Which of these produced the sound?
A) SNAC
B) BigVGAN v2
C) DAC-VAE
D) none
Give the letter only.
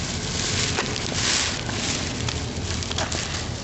D